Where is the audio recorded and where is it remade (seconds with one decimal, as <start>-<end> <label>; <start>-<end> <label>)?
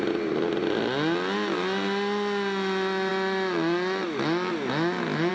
0.0-5.3 recorded